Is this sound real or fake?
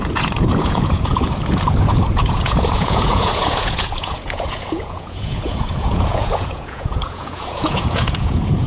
fake